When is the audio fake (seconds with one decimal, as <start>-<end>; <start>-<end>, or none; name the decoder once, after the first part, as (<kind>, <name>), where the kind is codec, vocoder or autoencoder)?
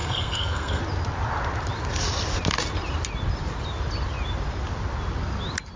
0.0-0.8 (codec, SNAC)